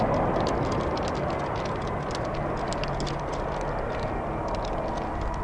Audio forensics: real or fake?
real